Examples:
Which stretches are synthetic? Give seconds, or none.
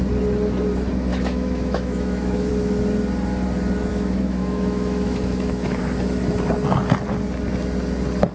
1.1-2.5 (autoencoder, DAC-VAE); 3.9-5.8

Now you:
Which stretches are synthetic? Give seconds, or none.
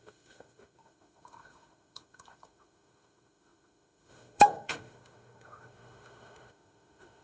0.0-7.2 (autoencoder, DAC-VAE)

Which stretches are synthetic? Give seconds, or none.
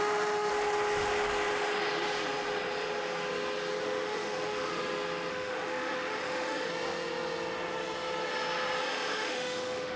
0.0-0.5 (autoencoder, DAC-VAE); 3.8-4.7; 5.3-6.7; 8.8-10.0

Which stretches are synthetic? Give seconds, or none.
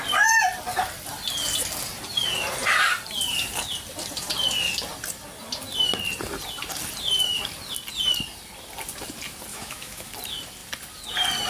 9.5-10.1 (autoencoder, DAC-VAE)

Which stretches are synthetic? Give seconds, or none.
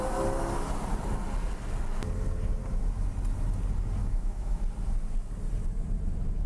4.0-4.6 (autoencoder, DAC-VAE)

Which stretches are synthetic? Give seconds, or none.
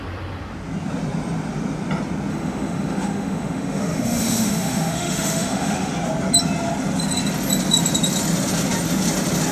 2.3-5.9 (autoencoder, DAC-VAE)